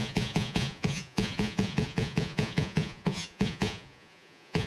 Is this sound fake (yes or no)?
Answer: yes